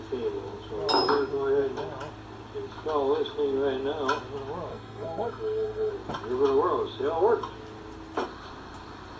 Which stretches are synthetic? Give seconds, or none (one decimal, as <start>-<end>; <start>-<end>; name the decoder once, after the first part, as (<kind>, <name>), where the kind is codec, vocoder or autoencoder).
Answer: 4.7-5.9 (codec, SNAC)